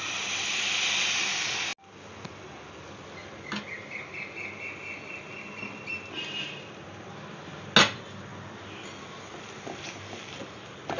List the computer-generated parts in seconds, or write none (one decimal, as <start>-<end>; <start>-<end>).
none